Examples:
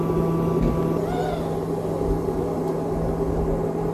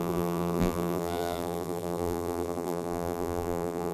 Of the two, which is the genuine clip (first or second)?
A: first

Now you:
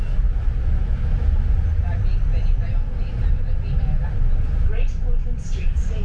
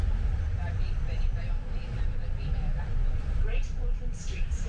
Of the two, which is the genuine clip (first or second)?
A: first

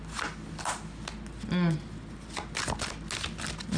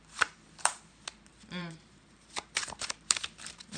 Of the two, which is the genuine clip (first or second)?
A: first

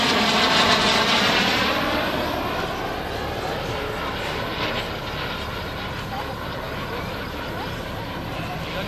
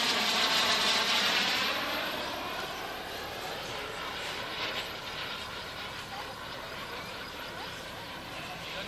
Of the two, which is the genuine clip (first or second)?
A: first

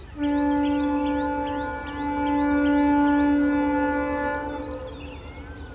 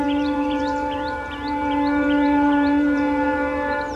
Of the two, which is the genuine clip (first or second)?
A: first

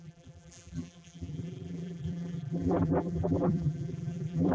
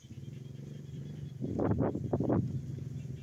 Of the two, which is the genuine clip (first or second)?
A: second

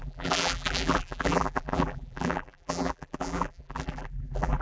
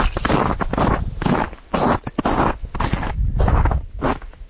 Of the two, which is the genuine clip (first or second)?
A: second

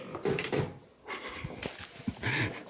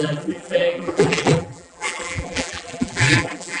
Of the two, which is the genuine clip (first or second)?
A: first